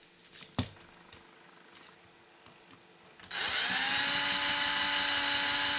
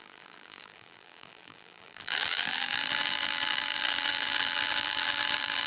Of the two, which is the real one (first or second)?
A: first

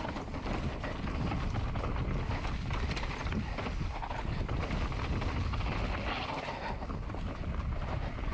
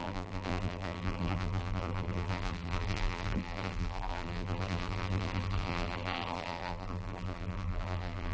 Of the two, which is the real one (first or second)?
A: first